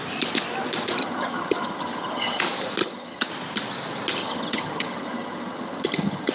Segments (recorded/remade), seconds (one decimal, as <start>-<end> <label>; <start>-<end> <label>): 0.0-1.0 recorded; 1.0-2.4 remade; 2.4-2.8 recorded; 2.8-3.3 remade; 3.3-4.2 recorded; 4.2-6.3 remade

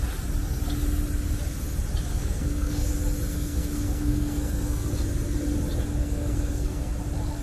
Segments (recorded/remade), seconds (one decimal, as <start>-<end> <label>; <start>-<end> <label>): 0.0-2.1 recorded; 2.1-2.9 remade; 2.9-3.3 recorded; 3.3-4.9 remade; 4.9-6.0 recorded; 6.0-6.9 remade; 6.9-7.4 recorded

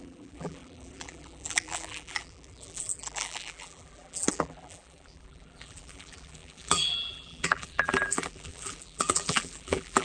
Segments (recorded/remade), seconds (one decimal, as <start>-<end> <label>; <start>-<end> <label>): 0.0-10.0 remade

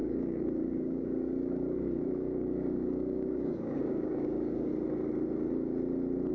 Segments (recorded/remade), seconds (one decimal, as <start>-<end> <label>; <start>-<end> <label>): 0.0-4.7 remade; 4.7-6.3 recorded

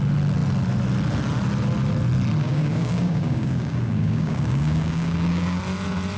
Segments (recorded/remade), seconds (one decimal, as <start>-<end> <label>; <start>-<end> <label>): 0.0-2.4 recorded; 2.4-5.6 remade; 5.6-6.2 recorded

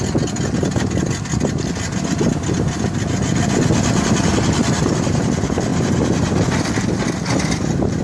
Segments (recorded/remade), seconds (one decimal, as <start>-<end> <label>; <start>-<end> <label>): 0.0-8.0 recorded